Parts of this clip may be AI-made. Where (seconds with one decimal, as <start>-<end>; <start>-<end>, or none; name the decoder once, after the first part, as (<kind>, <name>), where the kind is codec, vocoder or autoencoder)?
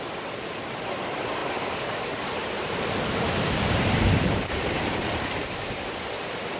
1.4-5.4 (vocoder, BigVGAN v2)